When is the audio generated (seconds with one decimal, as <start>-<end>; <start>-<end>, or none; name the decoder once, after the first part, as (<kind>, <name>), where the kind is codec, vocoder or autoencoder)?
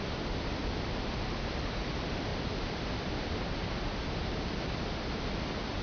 0.6-1.9 (vocoder, BigVGAN v2); 2.3-5.8